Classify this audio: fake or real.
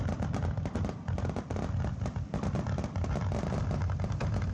fake